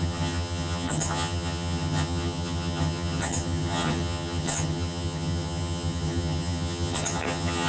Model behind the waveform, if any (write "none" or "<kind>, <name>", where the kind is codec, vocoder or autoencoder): vocoder, HiFi-GAN